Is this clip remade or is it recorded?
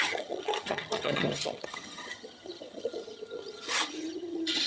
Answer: remade